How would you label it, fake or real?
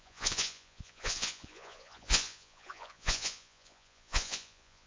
fake